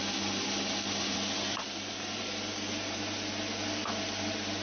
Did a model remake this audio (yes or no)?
no